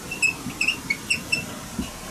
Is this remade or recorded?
recorded